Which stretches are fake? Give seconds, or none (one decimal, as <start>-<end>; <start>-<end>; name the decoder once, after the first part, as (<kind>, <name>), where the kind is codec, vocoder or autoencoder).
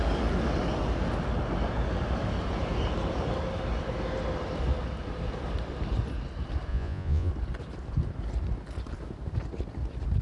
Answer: 6.7-7.3 (vocoder, Vocos)